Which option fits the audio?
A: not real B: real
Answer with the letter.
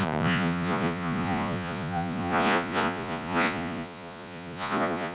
A